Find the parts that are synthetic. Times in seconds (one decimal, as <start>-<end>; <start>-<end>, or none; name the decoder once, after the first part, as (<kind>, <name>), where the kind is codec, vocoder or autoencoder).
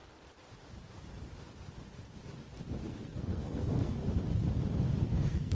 2.8-4.0 (codec, SNAC); 5.0-5.5